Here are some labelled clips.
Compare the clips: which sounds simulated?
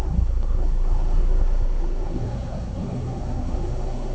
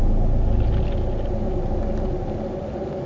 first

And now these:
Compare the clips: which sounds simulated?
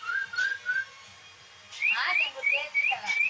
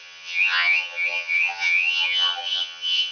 second